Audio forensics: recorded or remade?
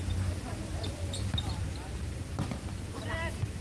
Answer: recorded